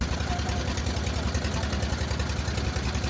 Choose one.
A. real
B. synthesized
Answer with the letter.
A